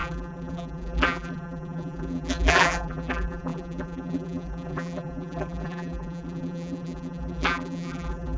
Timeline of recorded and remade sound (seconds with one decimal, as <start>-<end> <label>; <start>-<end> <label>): 0.0-8.4 remade